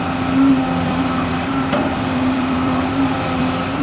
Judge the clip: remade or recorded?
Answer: remade